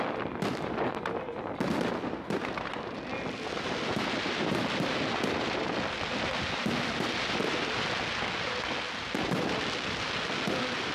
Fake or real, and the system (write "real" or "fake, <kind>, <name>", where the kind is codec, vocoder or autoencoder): real